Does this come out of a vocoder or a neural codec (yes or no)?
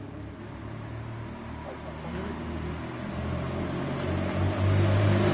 no